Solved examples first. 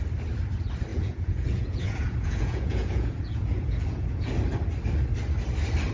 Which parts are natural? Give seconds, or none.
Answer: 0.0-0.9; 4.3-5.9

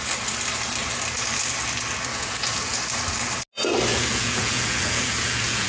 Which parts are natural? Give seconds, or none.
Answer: 0.0-2.1; 2.8-3.9

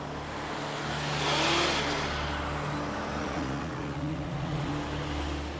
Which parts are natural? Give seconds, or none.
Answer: 0.0-3.2; 4.7-5.6

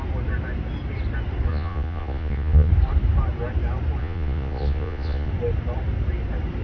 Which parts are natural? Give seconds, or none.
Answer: 0.0-1.5; 2.7-4.0; 5.3-6.6

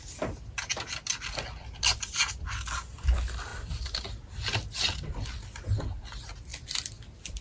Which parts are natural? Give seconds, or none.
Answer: 0.0-7.4